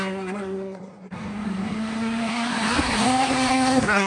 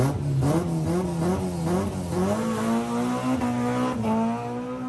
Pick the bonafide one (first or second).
second